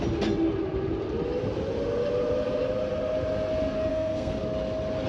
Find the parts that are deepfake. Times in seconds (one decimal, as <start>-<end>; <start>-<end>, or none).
3.9-4.4